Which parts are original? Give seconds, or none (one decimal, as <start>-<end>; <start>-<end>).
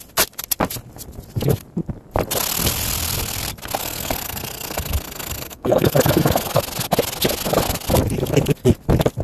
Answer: 0.0-3.8; 6.6-9.2